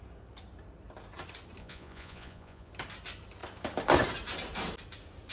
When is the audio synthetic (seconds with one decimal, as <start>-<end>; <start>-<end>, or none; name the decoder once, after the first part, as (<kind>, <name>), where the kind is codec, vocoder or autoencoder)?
1.6-2.7 (vocoder, Vocos)

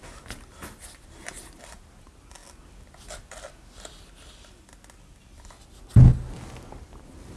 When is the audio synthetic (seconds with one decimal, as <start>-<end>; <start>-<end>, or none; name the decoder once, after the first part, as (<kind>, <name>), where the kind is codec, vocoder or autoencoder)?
none

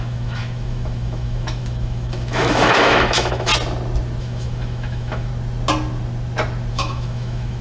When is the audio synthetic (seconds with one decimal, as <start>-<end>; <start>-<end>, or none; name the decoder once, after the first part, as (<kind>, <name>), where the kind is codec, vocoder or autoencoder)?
0.0-3.5 (autoencoder, DAC-VAE); 4.2-5.3; 6.7-7.6

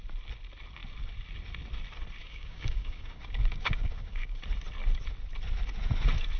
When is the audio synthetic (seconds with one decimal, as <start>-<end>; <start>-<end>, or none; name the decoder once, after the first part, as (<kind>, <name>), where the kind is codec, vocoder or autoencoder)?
2.2-4.4 (codec, DAC)

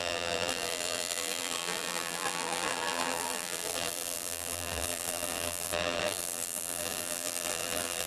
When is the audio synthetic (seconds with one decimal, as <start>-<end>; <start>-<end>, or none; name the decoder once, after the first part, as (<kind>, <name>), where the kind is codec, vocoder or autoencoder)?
0.0-8.1 (vocoder, BigVGAN v2)

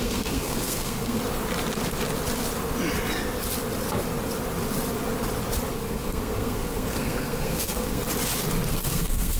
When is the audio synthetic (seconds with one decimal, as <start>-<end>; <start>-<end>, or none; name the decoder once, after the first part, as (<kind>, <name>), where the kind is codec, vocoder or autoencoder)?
0.0-1.2 (codec, SNAC); 5.7-8.0; 8.7-9.4

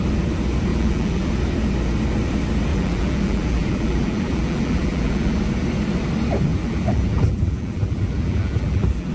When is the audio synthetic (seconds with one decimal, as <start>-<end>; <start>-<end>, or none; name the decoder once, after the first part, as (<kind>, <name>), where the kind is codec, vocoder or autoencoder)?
0.7-1.3 (vocoder, BigVGAN v2); 2.7-5.4; 6.5-9.1